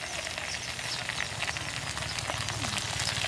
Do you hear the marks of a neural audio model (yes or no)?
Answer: no